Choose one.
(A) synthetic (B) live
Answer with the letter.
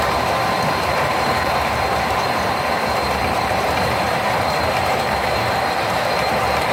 A